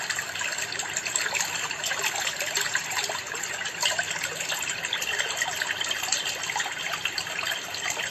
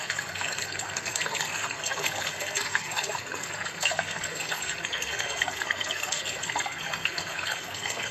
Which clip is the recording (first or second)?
first